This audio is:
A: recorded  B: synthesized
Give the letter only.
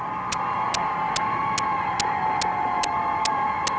A